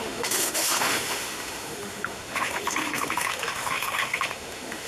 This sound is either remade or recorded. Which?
remade